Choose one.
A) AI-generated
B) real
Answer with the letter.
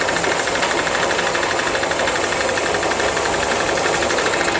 B